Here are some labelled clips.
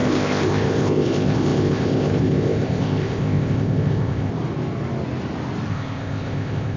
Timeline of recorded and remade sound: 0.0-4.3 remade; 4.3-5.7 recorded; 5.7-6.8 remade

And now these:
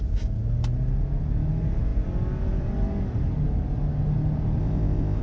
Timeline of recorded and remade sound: 0.0-4.6 recorded; 4.6-5.2 remade